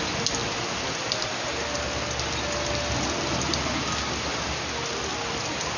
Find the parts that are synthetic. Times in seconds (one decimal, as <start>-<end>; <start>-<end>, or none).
none